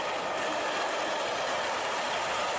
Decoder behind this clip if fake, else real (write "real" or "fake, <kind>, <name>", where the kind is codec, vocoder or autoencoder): real